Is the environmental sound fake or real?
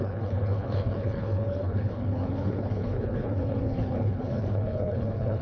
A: fake